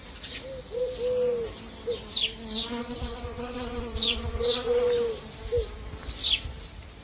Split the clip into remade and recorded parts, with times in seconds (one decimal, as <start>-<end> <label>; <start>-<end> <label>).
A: 0.0-2.8 recorded; 2.8-4.8 remade; 4.8-7.0 recorded